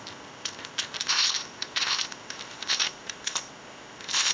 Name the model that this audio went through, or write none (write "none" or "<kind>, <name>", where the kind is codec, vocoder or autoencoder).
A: codec, ZipCodec